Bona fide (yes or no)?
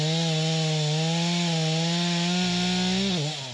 yes